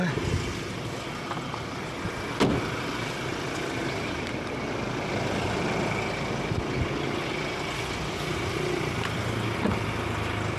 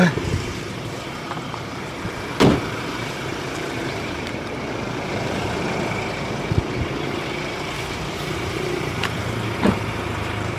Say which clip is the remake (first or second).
second